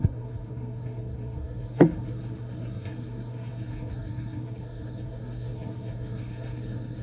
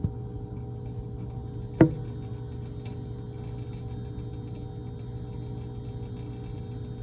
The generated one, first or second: first